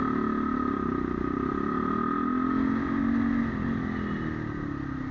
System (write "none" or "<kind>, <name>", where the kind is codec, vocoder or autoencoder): none